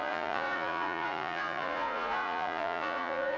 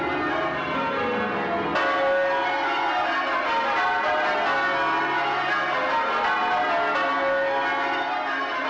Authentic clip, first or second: second